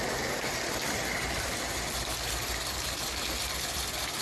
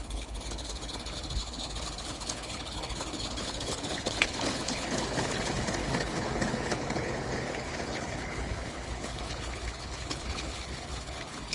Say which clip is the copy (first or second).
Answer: second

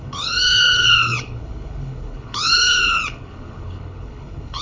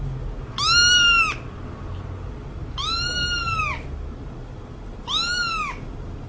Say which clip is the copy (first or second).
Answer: first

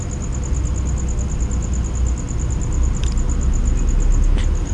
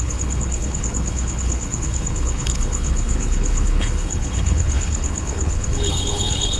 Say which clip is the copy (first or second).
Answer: second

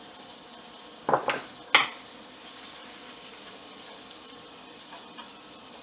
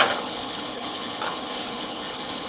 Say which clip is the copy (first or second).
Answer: second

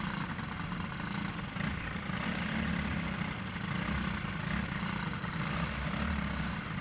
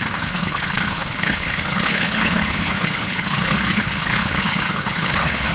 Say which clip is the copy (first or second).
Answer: second